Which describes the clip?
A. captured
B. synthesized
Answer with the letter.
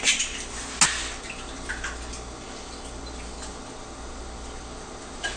A